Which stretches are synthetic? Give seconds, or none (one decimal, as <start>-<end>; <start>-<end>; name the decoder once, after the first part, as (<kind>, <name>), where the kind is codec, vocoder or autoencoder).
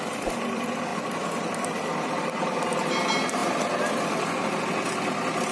none